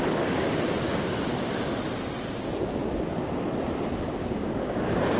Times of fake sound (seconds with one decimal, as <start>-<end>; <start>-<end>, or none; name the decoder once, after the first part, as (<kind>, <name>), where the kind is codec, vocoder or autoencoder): 0.0-1.3 (codec, DAC); 4.2-5.2